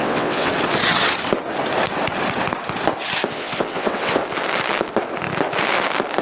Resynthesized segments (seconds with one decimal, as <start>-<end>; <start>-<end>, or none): 0.0-0.5; 3.3-4.2